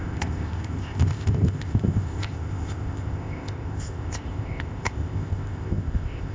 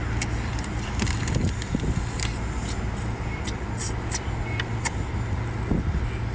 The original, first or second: second